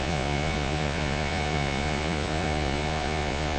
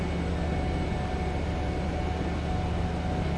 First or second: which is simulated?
first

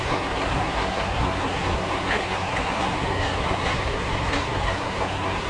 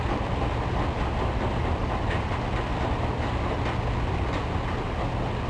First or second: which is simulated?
first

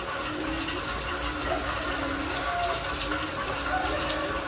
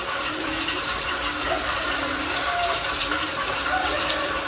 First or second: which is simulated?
second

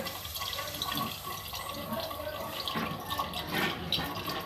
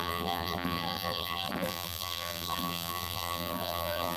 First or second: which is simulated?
second